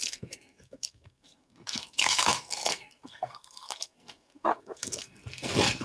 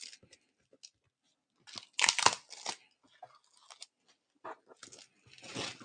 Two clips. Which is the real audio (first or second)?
second